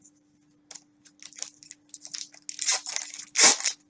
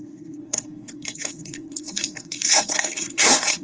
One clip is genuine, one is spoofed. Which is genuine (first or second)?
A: first